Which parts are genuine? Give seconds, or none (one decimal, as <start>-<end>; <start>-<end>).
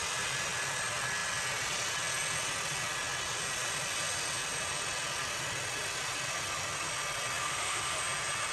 0.0-7.4; 8.0-8.5